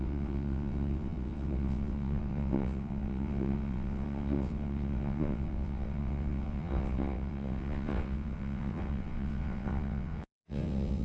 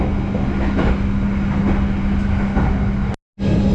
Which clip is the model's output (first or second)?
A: first